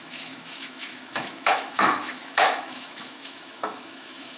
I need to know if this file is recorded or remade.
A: remade